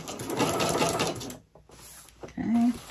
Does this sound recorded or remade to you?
recorded